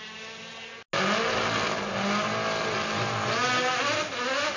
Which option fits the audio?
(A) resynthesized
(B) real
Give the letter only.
B